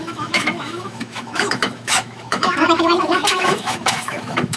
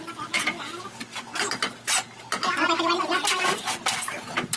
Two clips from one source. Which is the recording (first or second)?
second